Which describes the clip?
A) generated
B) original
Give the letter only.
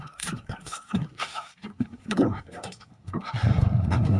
A